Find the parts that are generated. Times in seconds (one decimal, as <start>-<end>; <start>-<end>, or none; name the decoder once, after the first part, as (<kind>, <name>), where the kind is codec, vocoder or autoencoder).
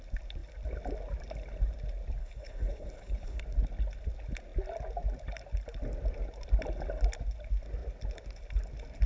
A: 2.2-3.4 (codec, HILCodec)